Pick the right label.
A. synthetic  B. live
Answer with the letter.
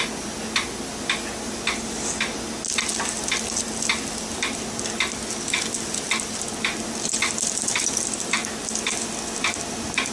B